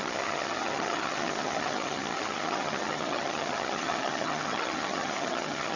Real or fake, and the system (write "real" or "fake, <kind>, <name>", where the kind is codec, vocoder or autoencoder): fake, vocoder, HiFi-GAN